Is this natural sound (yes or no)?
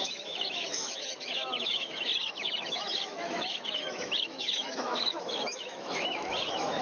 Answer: no